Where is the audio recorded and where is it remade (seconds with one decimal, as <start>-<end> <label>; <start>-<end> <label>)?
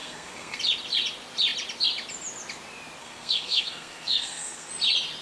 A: 0.0-0.6 remade; 0.6-3.0 recorded; 3.0-4.7 remade; 4.7-5.2 recorded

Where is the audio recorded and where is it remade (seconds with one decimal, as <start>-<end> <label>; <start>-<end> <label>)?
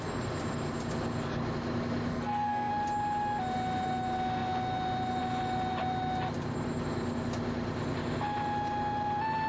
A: 0.0-2.1 recorded; 2.1-2.7 remade; 2.7-9.5 recorded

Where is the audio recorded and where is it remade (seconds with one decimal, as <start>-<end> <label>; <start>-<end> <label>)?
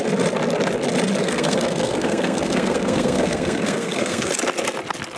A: 0.0-1.2 recorded; 1.2-4.3 remade; 4.3-5.2 recorded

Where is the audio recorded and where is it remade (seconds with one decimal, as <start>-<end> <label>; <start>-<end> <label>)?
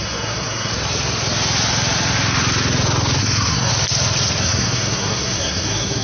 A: 0.0-0.7 remade; 0.7-3.2 recorded; 3.2-3.7 remade; 3.7-4.4 recorded; 4.4-6.0 remade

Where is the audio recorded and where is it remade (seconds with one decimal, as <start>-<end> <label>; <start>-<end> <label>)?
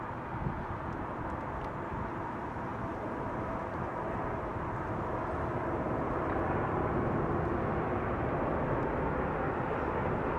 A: 0.0-10.4 recorded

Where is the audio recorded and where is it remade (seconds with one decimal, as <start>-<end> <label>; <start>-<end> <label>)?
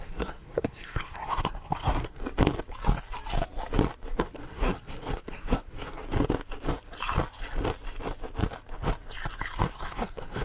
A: 0.0-2.2 remade; 2.2-4.2 recorded; 4.2-6.0 remade; 6.0-9.7 recorded; 9.7-10.4 remade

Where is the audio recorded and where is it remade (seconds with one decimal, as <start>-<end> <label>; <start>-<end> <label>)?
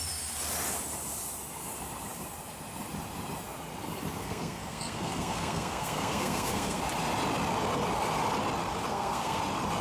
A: 0.0-4.2 recorded; 4.2-6.8 remade; 6.8-8.9 recorded; 8.9-9.4 remade; 9.4-9.8 recorded